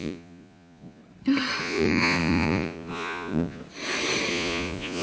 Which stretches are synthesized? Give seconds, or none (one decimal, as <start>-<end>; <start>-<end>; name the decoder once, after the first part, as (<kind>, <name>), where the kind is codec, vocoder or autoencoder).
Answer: 0.0-1.0 (vocoder, Vocos); 1.6-3.6; 4.3-5.0